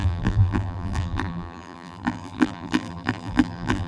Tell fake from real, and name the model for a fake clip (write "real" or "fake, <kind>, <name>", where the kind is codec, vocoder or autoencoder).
fake, vocoder, BigVGAN v2